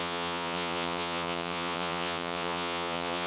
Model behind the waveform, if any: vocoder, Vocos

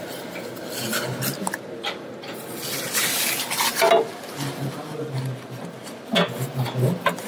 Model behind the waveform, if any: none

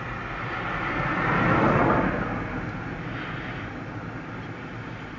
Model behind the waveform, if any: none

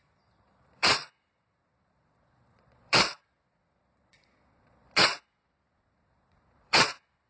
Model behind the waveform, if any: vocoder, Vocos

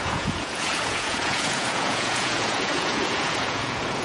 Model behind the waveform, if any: vocoder, Vocos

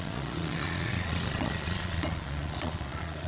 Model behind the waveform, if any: vocoder, Vocos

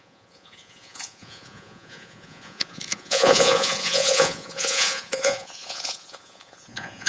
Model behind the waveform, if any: vocoder, Vocos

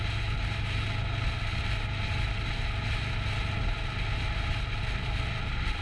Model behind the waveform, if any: none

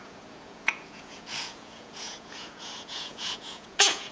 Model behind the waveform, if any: vocoder, Vocos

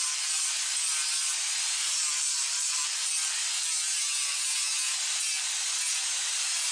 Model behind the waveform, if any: none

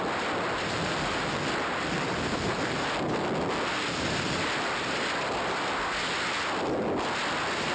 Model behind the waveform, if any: none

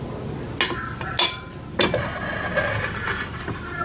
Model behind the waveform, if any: none